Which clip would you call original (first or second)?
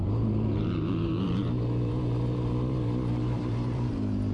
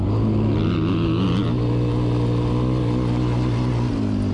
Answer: second